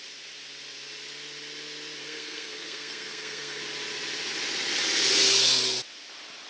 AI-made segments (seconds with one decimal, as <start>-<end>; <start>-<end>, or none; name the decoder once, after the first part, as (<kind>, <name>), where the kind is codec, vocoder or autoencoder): 2.0-3.6 (codec, SNAC)